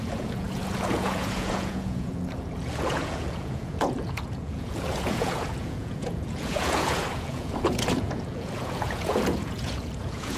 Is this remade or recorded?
remade